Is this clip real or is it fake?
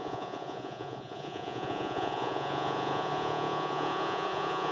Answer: fake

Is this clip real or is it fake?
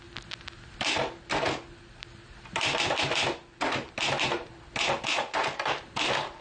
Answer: real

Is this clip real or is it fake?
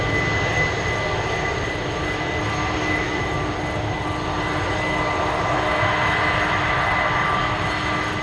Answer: real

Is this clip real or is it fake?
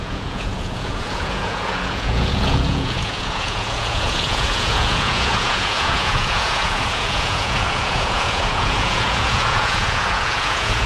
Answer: fake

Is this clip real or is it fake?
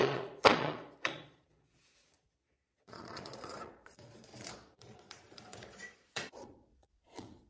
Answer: fake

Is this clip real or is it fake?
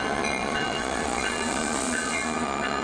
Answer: fake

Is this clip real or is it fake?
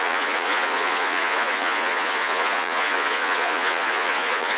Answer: fake